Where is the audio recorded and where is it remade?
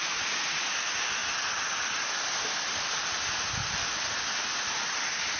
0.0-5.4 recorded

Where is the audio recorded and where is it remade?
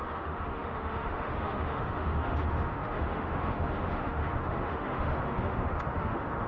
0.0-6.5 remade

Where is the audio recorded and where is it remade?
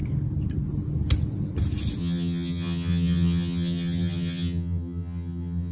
0.0-2.0 recorded; 2.0-5.7 remade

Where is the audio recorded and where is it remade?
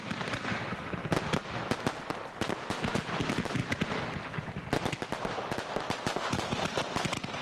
0.0-1.0 remade; 1.0-2.2 recorded; 2.2-3.6 remade; 3.6-4.8 recorded; 4.8-7.4 remade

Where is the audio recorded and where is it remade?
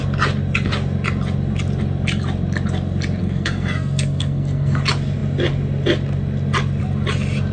0.0-3.2 recorded; 3.2-4.8 remade; 4.8-7.5 recorded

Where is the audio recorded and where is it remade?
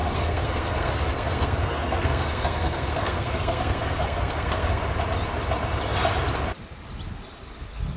0.0-4.8 remade; 4.8-8.0 recorded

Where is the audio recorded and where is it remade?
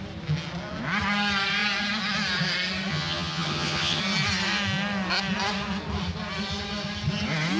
0.0-2.9 recorded; 2.9-4.0 remade; 4.0-7.6 recorded